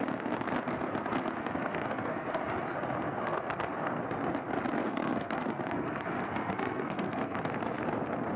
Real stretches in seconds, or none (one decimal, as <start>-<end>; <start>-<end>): 0.0-1.4; 2.3-3.1; 4.0-4.8; 7.4-8.4